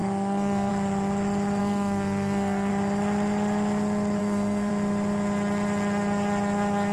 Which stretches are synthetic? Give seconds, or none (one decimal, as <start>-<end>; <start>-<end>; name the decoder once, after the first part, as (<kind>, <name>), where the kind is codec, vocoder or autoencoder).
0.0-0.7 (codec, SNAC); 1.6-2.7; 4.2-4.7